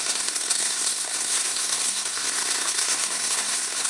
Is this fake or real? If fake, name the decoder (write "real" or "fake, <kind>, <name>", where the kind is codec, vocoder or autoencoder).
fake, codec, SNAC